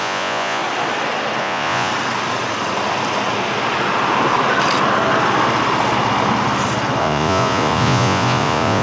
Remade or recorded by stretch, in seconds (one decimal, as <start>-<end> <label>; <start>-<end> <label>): 0.0-0.6 remade; 0.6-1.4 recorded; 1.4-1.9 remade; 1.9-7.0 recorded; 7.0-8.8 remade